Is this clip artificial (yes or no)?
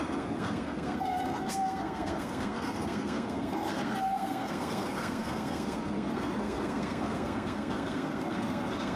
yes